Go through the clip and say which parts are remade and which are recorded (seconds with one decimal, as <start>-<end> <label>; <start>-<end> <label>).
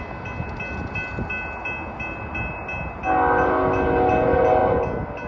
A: 0.0-5.3 recorded